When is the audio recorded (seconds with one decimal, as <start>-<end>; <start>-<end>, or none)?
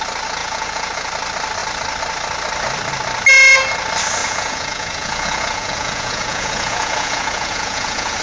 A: 0.0-0.4; 1.1-4.2